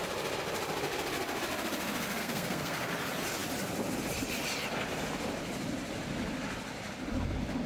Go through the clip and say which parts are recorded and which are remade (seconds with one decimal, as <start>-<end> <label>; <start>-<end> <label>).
0.0-2.2 recorded; 2.2-2.9 remade; 2.9-7.7 recorded